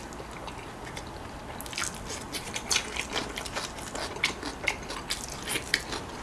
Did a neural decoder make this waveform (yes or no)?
no